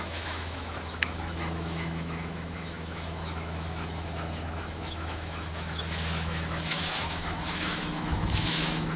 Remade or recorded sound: remade